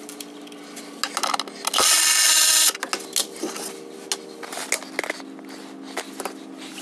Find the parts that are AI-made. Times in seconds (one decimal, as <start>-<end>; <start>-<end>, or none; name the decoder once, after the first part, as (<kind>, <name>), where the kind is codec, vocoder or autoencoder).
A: none